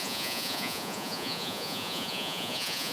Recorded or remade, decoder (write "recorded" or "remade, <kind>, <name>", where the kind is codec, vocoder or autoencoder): remade, vocoder, Vocos